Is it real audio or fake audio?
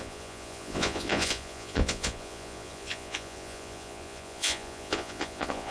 fake